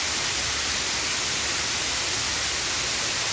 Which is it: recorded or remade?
recorded